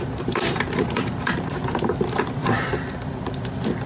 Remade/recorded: remade